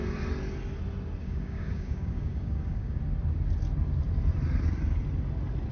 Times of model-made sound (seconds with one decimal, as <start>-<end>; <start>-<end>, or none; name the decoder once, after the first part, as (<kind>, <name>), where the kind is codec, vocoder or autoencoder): 1.2-3.0 (codec, DAC)